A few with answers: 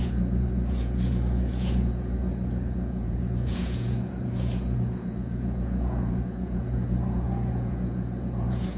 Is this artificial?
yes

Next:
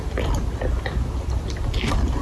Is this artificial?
no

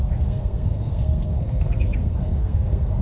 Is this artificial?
yes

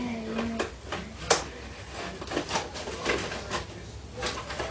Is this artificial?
no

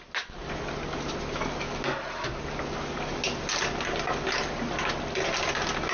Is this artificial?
no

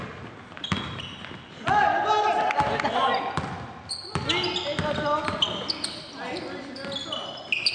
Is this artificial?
no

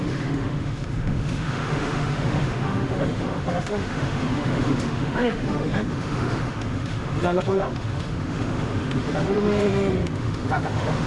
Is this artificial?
yes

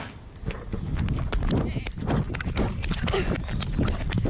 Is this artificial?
no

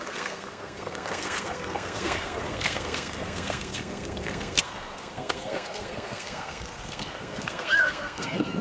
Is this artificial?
yes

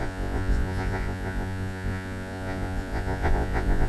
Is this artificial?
yes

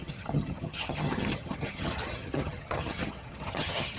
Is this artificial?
yes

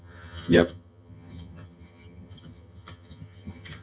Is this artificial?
yes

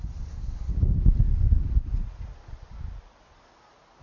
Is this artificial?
no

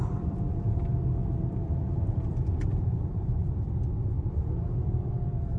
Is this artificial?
yes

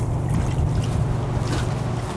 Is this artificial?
no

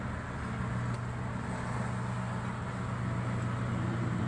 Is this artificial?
no